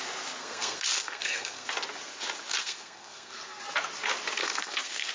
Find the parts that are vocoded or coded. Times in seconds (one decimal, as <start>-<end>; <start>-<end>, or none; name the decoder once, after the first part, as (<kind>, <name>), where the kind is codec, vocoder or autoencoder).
0.4-1.7 (codec, SNAC); 2.6-3.6; 4.4-5.1